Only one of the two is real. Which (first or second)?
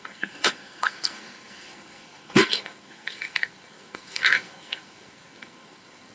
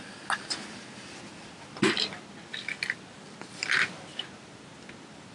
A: second